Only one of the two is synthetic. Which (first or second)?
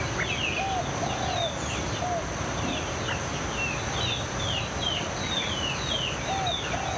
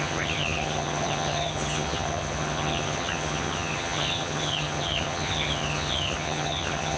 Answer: second